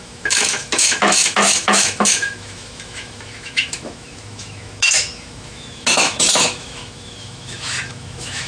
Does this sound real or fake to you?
fake